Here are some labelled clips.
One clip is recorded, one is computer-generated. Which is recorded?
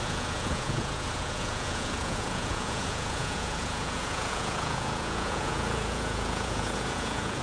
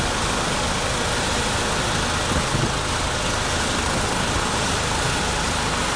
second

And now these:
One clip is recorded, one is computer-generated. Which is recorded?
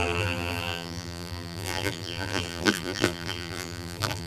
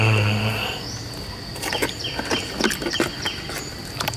second